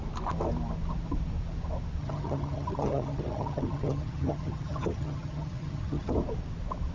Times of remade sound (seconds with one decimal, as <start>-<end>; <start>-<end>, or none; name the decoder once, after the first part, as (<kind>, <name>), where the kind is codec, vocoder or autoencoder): 2.0-6.1 (vocoder, HiFi-GAN)